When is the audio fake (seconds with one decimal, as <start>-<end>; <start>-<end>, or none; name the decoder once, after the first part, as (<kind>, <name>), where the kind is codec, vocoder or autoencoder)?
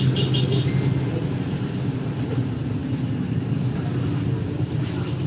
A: none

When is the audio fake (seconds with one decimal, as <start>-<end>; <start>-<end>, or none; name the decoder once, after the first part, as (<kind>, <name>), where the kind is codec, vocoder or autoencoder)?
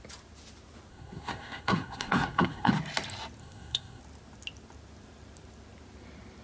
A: 0.9-2.7 (codec, SNAC); 3.4-4.0